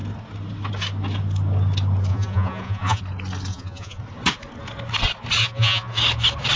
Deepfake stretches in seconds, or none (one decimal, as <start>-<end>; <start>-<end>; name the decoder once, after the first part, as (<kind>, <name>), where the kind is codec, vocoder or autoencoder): 2.1-3.0 (vocoder, Vocos); 3.5-4.0; 5.4-6.0